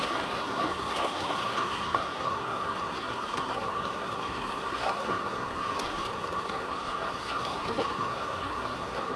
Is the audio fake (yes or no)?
yes